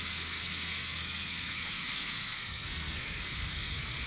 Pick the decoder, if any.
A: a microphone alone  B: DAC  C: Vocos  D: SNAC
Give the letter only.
D